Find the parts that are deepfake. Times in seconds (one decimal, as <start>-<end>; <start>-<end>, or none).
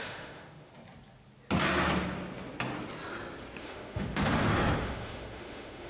0.0-0.7; 3.6-4.2; 4.8-5.9